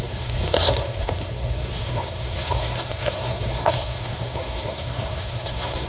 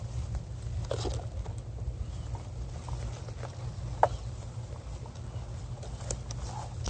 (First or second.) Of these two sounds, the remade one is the first